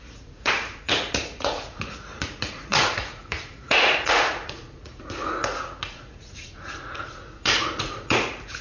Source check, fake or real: fake